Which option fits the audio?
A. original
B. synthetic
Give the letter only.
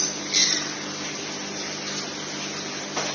A